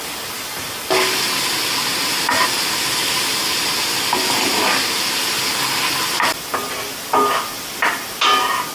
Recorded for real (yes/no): yes